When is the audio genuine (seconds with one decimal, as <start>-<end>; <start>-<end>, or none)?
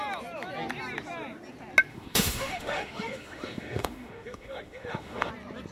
0.0-1.9; 5.3-5.7